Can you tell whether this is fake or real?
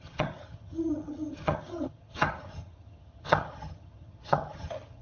fake